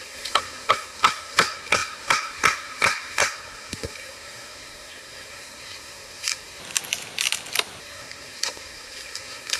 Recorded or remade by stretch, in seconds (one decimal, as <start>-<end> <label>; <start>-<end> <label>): 0.0-6.6 remade; 6.6-7.8 recorded; 7.8-9.6 remade